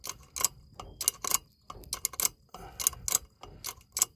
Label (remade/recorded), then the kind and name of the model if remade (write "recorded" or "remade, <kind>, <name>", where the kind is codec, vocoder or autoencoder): recorded